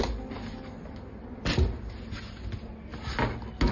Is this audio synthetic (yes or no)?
no